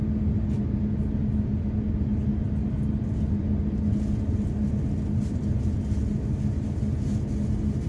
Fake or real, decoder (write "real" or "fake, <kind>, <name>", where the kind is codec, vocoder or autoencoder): real